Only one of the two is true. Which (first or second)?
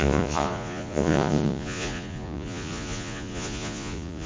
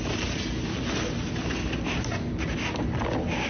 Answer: second